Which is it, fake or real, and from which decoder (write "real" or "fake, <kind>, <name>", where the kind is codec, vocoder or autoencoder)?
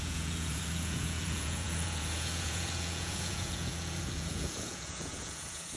fake, vocoder, Vocos